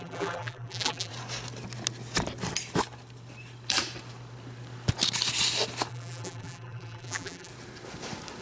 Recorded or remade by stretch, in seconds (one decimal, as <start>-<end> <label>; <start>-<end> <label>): 0.0-1.1 remade; 1.1-5.9 recorded; 5.9-7.5 remade; 7.5-8.4 recorded